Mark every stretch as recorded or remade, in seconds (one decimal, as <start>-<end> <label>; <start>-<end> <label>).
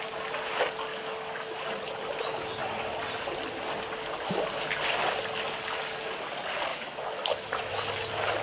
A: 0.0-0.9 recorded; 0.9-1.6 remade; 1.6-6.7 recorded; 6.7-7.7 remade; 7.7-8.4 recorded